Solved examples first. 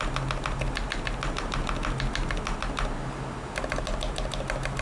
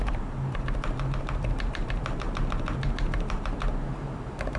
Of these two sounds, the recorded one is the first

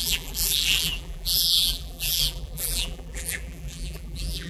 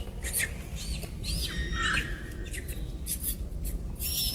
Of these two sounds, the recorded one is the second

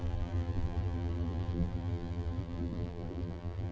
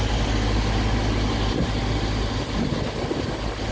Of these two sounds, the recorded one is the second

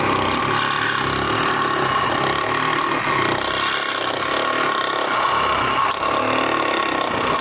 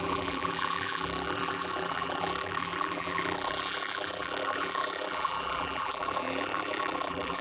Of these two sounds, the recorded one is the first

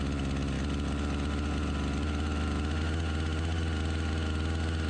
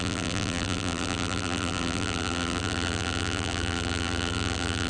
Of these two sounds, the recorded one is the first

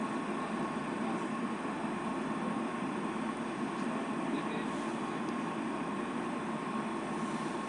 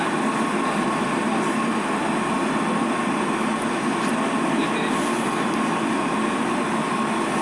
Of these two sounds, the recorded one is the second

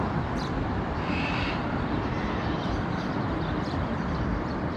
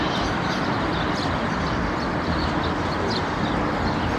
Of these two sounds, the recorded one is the second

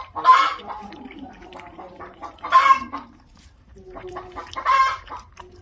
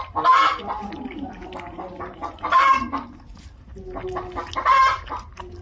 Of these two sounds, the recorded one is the second